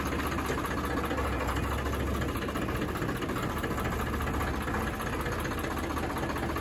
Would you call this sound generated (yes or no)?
no